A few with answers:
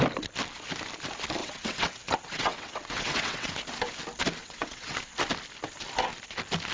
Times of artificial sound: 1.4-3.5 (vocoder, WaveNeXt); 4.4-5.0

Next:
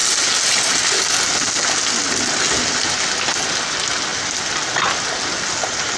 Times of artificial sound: none

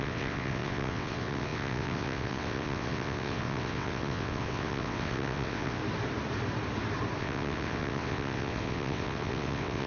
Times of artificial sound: 0.0-5.8 (vocoder, WaveNeXt); 7.2-9.9